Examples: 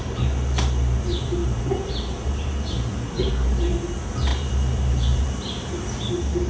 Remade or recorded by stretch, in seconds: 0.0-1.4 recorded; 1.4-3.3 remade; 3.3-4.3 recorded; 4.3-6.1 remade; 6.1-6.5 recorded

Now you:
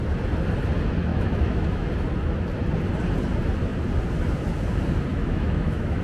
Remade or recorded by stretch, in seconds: 0.0-1.1 recorded; 1.1-1.9 remade; 1.9-5.1 recorded; 5.1-6.0 remade

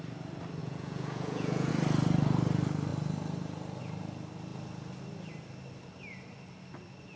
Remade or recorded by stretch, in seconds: 0.0-0.6 recorded; 0.6-1.7 remade; 1.7-7.2 recorded

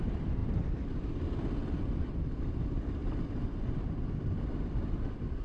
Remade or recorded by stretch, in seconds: 0.0-0.4 remade; 0.4-1.0 recorded; 1.0-3.0 remade; 3.0-3.6 recorded; 3.6-5.4 remade

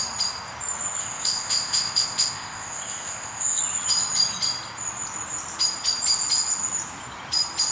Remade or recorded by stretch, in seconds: 0.0-1.0 recorded; 1.0-3.6 remade; 3.6-7.7 recorded

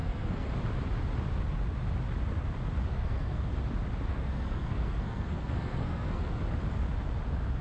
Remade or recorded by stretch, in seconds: 0.0-0.5 remade; 0.5-2.9 recorded; 2.9-3.5 remade; 3.5-4.1 recorded; 4.1-6.4 remade; 6.4-7.6 recorded